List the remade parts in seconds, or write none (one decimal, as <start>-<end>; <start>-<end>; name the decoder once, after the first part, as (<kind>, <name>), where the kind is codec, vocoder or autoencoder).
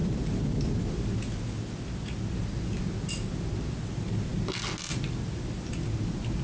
none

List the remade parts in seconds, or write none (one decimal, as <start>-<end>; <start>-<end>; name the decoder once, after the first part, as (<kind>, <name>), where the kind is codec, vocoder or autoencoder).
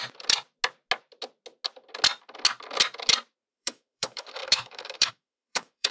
3.5-5.9 (autoencoder, DAC-VAE)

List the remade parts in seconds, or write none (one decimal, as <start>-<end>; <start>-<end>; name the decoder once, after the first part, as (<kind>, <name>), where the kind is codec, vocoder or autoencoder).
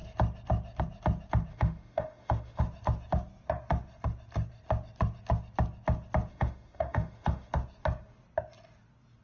1.5-2.6 (autoencoder, DAC-VAE); 6.3-7.5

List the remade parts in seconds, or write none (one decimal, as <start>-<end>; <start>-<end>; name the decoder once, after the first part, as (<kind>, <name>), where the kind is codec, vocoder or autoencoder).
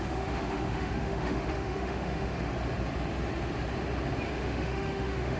0.0-2.5 (autoencoder, DAC-VAE); 4.3-5.4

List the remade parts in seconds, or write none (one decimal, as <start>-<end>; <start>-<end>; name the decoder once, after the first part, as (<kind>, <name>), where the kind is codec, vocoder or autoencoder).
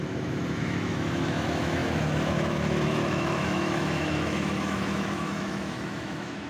0.0-6.5 (autoencoder, DAC-VAE)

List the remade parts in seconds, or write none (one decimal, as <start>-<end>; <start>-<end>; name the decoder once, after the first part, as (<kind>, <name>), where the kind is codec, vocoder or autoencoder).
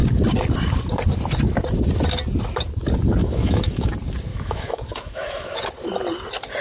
3.2-3.9 (autoencoder, DAC-VAE); 4.3-5.6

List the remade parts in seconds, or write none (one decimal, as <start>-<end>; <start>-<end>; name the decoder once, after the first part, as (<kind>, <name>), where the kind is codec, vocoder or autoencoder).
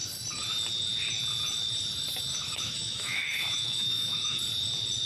2.3-4.4 (autoencoder, DAC-VAE)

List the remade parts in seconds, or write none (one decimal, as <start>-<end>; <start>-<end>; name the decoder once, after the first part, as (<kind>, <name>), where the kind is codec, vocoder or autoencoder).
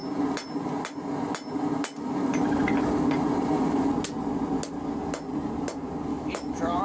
6.1-6.8 (autoencoder, DAC-VAE)